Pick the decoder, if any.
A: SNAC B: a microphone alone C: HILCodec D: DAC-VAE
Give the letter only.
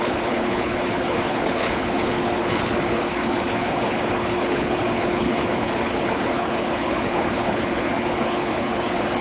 C